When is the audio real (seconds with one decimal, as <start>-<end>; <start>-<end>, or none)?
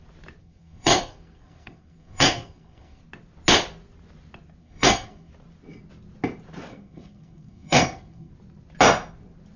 0.0-0.4; 3.0-4.6; 5.3-6.7; 8.3-9.6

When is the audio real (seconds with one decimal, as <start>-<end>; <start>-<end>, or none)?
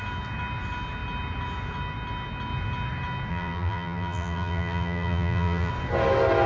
0.0-3.3; 5.7-6.5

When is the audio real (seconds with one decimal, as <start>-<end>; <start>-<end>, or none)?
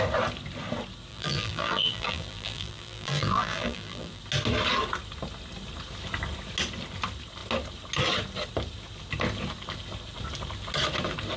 0.0-1.1; 4.2-11.4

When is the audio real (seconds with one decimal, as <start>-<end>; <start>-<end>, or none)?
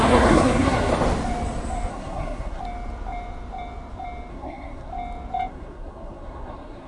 0.9-1.9; 2.6-4.3; 4.9-5.5